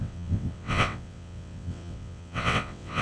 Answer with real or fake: fake